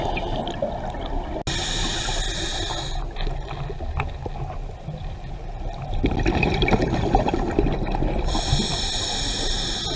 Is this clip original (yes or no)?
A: yes